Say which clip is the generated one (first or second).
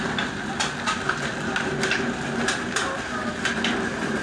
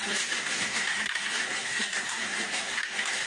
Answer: second